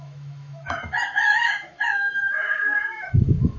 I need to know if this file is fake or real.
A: fake